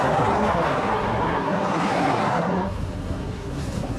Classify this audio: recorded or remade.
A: remade